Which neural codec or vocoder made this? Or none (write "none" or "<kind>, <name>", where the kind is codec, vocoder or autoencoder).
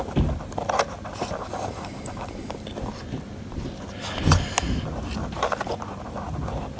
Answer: none